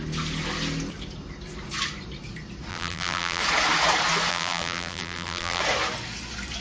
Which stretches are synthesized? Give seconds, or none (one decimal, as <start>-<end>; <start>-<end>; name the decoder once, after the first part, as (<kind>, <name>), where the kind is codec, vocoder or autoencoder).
2.7-3.4 (vocoder, BigVGAN v2); 4.3-5.6

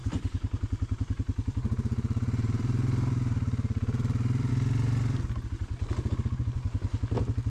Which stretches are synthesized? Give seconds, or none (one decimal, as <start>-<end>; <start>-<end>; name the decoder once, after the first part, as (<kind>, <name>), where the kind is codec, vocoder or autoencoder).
0.0-4.5 (vocoder, BigVGAN v2)

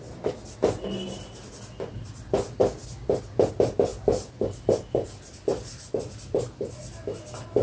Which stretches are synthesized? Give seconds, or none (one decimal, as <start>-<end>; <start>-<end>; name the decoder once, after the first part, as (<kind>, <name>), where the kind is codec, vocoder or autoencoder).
none

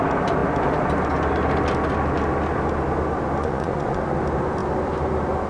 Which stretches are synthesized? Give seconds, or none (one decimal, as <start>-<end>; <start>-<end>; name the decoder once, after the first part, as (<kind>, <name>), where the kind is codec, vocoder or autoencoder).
3.4-4.0 (vocoder, Vocos)